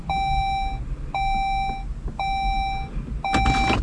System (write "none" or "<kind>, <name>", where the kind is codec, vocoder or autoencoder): none